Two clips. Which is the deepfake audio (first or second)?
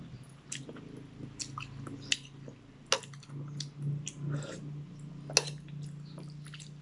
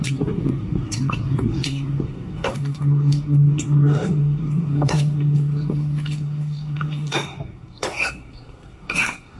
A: second